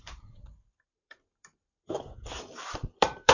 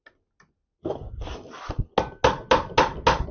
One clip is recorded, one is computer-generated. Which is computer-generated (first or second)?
first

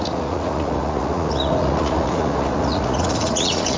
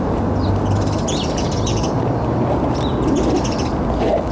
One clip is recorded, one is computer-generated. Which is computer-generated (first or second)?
first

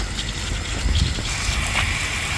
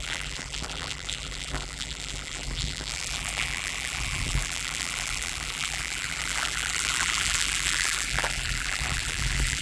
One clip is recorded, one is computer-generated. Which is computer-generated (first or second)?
second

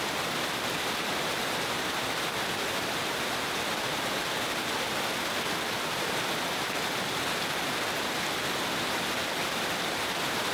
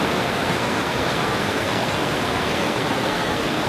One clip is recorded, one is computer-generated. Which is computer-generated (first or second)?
second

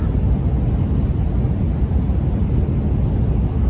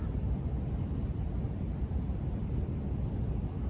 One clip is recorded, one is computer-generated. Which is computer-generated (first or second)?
second